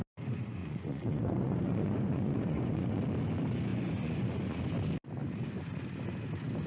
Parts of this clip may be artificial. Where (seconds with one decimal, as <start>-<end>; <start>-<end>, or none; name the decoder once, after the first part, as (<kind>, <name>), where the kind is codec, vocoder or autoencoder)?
0.6-3.0 (vocoder, Vocos); 3.7-4.6